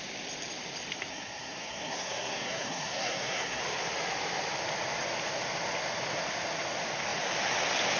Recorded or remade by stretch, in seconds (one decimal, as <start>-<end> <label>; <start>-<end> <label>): 0.0-1.1 recorded; 1.1-3.6 remade; 3.6-8.0 recorded